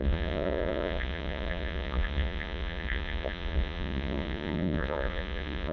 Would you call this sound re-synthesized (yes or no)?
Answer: yes